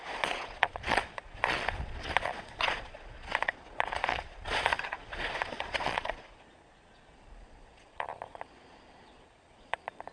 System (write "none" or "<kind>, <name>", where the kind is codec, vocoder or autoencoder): vocoder, Vocos